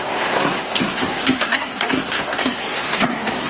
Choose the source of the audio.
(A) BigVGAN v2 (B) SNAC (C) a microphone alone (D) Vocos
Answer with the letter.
B